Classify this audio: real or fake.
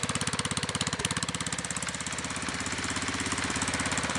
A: real